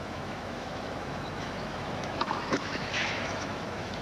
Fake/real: fake